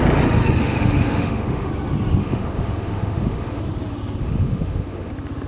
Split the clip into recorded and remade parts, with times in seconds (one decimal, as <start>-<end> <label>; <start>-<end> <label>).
0.0-0.6 recorded; 0.6-1.7 remade; 1.7-2.2 recorded; 2.2-3.6 remade; 3.6-4.2 recorded; 4.2-5.1 remade; 5.1-5.5 recorded